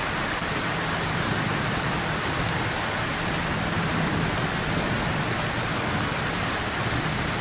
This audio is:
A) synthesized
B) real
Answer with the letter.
B